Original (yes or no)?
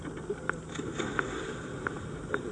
yes